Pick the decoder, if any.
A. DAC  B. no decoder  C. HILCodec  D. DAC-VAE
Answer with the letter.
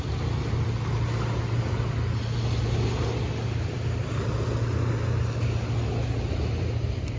B